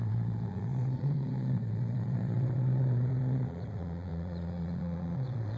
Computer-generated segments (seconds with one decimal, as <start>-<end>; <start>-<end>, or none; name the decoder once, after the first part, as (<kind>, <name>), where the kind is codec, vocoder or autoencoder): 0.0-5.6 (vocoder, Vocos)